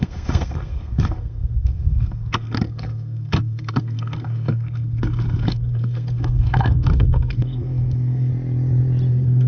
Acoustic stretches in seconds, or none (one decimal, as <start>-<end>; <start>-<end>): 8.3-9.1